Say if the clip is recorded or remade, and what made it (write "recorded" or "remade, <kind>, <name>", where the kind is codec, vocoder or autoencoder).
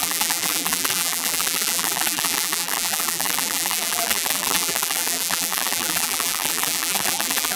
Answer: remade, vocoder, BigVGAN v2